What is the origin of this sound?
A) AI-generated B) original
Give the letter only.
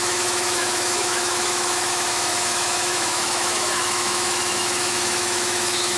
A